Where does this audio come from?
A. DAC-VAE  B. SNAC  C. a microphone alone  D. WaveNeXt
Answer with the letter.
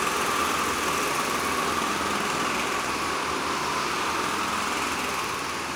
C